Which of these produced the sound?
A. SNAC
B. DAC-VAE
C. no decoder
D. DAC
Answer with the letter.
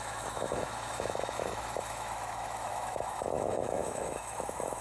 B